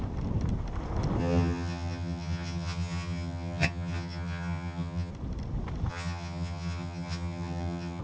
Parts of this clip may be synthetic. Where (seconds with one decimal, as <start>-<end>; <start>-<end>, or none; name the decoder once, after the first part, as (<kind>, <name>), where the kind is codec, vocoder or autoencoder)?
1.2-5.1 (vocoder, HiFi-GAN); 5.9-8.0